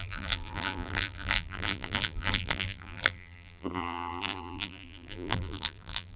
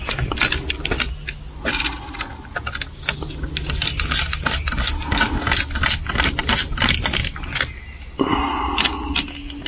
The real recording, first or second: second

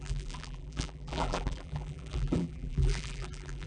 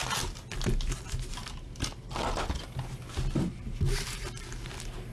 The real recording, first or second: second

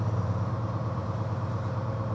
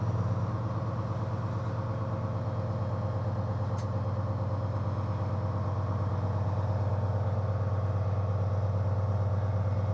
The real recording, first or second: second